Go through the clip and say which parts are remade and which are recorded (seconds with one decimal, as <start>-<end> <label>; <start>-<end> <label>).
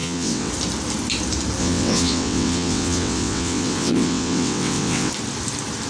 0.0-0.5 remade; 0.5-1.6 recorded; 1.6-5.1 remade; 5.1-5.9 recorded